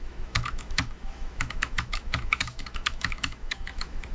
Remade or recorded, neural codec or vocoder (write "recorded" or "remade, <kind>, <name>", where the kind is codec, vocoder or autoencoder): remade, autoencoder, DAC-VAE